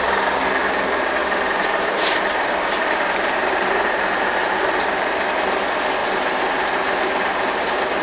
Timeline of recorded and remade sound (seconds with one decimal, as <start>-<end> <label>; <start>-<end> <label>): 0.0-1.2 recorded; 1.2-5.2 remade; 5.2-6.0 recorded; 6.0-7.6 remade; 7.6-8.0 recorded